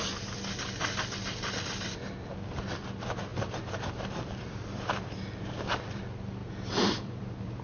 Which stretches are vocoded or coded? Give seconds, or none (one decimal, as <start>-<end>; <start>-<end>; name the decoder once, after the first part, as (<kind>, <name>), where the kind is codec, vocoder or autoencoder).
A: 3.3-6.0 (vocoder, BigVGAN v2); 6.4-7.6